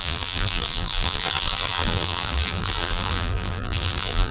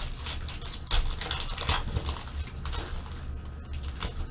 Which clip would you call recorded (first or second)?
second